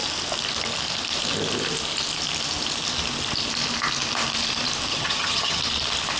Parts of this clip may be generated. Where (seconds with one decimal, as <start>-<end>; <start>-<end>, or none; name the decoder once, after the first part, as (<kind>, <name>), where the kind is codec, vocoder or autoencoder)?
4.9-5.6 (vocoder, HiFi-GAN)